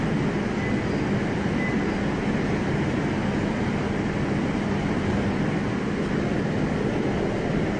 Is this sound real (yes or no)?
yes